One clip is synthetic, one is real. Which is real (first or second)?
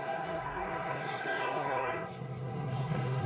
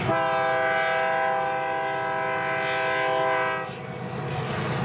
second